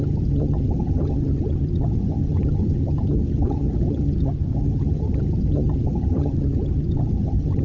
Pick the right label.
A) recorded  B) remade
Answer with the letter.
B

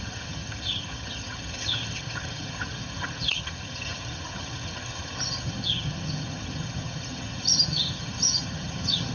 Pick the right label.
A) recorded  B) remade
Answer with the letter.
B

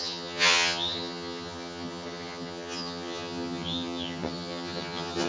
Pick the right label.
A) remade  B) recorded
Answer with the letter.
A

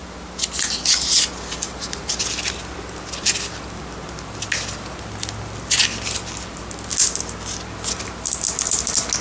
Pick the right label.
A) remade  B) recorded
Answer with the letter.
B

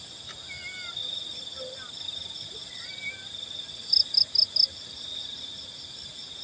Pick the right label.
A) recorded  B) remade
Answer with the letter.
A